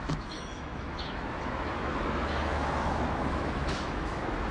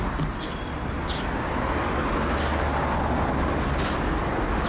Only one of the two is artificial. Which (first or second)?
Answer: first